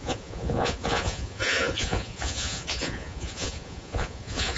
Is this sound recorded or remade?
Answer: remade